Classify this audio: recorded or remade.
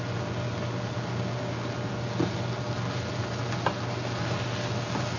recorded